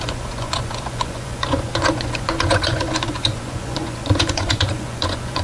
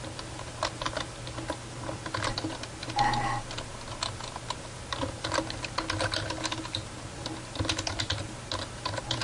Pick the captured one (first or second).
second